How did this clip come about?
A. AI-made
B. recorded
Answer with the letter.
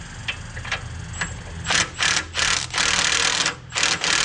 B